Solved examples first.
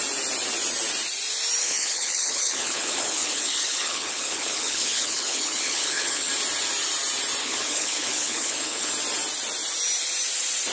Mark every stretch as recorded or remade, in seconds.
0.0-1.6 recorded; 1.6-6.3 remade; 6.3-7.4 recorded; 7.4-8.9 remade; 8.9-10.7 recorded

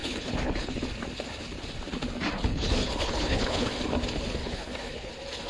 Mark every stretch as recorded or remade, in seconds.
0.0-0.8 remade; 0.8-2.5 recorded; 2.5-3.7 remade; 3.7-4.4 recorded; 4.4-5.1 remade; 5.1-5.5 recorded

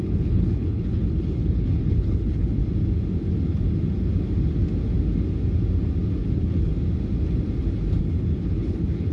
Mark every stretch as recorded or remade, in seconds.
0.0-2.6 remade; 2.6-6.3 recorded; 6.3-6.7 remade; 6.7-8.0 recorded; 8.0-9.1 remade

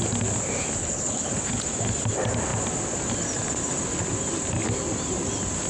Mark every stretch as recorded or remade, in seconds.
0.0-0.8 recorded; 0.8-1.3 remade; 1.3-5.7 recorded

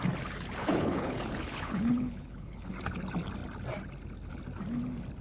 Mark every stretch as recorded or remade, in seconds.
0.0-0.6 recorded; 0.6-2.7 remade; 2.7-5.2 recorded

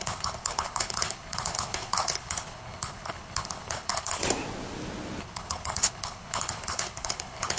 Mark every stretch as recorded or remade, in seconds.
0.0-4.2 remade; 4.2-5.2 recorded; 5.2-7.6 remade